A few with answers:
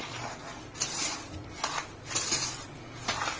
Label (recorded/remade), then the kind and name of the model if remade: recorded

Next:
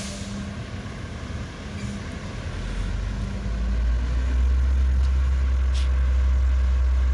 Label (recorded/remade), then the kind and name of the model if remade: recorded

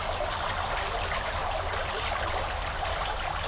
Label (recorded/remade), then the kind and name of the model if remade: recorded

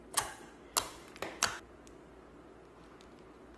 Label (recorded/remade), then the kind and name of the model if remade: recorded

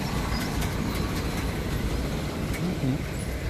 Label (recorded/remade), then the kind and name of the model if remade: remade, vocoder, BigVGAN v2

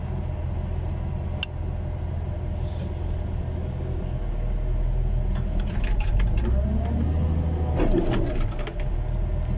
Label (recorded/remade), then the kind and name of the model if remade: recorded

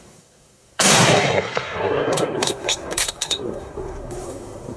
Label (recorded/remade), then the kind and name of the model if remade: remade, codec, SNAC